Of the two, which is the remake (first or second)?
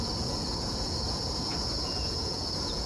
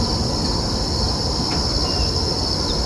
first